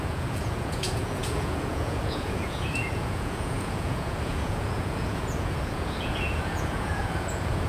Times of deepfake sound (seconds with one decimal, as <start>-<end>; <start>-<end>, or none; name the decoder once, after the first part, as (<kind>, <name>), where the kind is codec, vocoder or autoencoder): 0.0-7.7 (vocoder, Vocos)